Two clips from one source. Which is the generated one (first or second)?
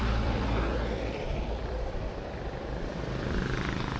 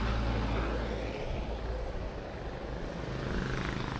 first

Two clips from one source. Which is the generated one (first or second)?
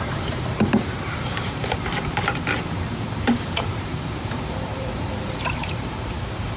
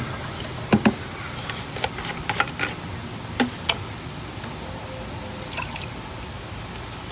first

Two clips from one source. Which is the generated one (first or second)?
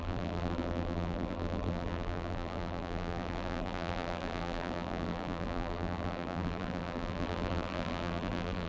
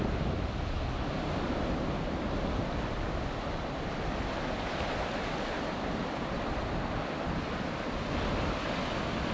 first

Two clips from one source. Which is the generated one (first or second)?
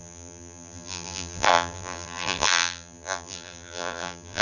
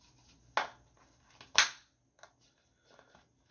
first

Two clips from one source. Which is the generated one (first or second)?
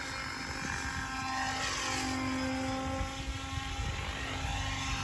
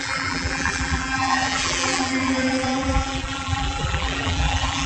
second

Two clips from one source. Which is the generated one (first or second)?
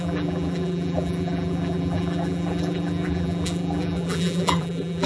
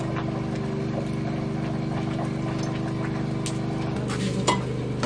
first